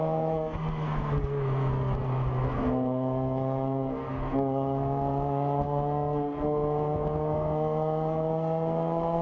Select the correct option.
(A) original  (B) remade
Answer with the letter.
B